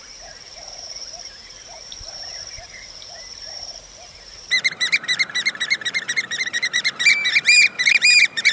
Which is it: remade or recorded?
remade